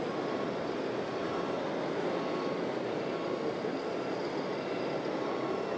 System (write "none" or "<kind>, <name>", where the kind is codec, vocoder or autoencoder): none